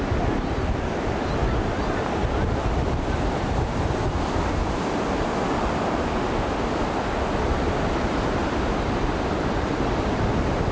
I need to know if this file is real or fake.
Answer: real